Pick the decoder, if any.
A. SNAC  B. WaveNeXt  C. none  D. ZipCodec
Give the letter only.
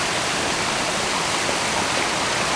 C